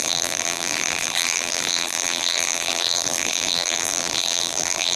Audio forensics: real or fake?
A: fake